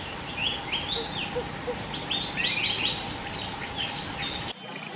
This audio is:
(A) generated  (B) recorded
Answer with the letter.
B